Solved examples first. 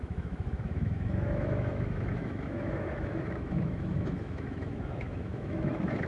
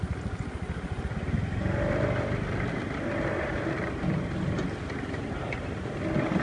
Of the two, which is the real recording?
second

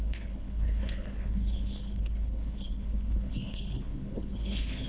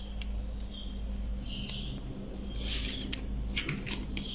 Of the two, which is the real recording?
second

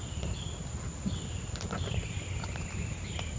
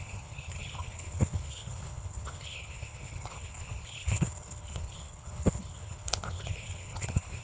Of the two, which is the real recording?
first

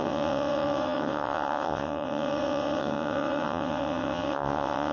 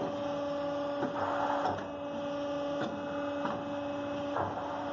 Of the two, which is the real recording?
second